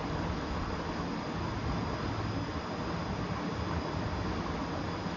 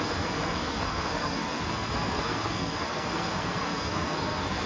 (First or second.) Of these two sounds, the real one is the first